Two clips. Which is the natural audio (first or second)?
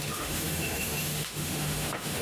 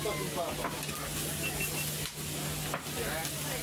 second